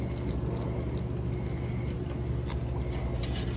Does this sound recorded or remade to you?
recorded